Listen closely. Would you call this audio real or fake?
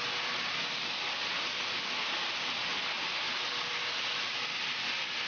real